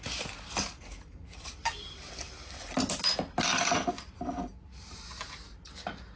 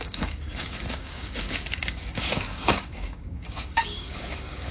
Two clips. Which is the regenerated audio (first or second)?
second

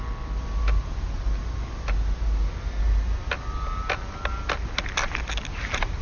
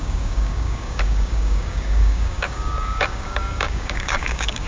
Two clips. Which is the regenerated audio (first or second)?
second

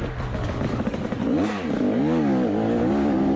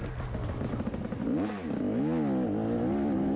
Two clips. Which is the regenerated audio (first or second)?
first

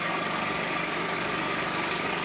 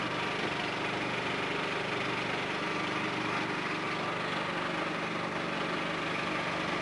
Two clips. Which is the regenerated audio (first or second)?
first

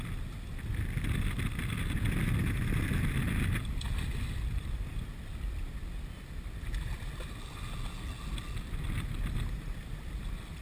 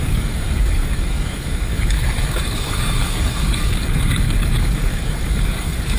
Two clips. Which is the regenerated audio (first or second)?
second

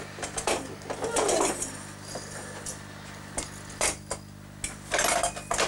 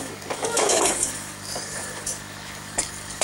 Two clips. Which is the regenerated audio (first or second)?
second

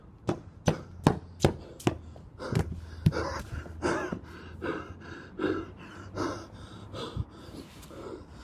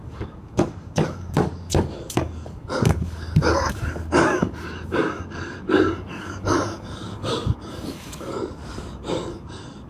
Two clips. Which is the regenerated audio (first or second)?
second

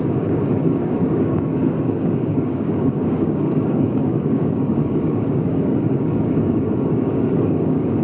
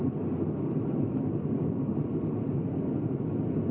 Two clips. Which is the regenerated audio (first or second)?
first